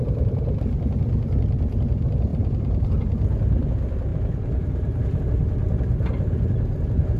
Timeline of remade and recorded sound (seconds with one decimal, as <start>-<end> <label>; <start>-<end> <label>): 0.0-2.3 recorded; 2.3-2.9 remade; 2.9-4.1 recorded; 4.1-5.2 remade; 5.2-7.2 recorded